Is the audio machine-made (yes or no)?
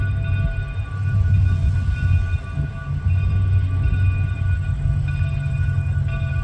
no